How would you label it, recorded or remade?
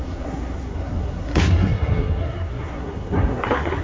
remade